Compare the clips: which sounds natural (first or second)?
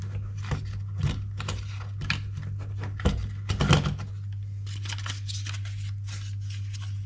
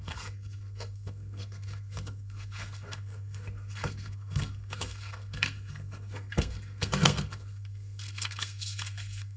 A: first